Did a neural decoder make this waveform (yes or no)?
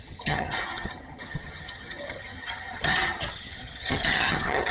yes